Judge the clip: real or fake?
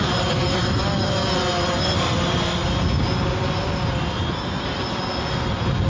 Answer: real